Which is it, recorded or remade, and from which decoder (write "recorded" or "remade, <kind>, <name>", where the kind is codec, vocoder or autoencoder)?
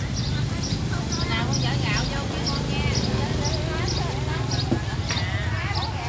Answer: recorded